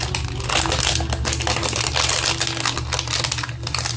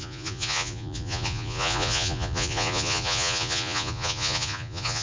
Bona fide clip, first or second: first